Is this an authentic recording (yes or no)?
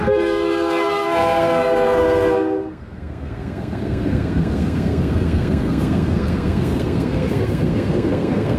no